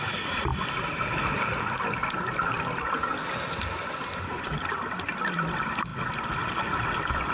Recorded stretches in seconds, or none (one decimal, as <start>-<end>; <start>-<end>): 0.0-7.3